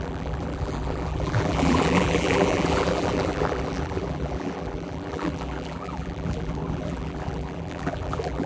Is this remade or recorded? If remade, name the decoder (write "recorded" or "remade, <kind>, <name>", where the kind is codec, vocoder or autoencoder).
remade, vocoder, BigVGAN v2